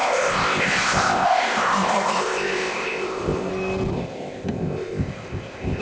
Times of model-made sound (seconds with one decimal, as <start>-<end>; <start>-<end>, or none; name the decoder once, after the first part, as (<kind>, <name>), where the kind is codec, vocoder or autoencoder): 0.0-3.5 (codec, ZipCodec); 3.9-5.8